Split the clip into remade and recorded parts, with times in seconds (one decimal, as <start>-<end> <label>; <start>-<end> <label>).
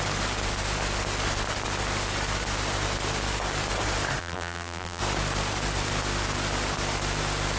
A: 0.0-4.2 recorded; 4.2-5.0 remade; 5.0-7.6 recorded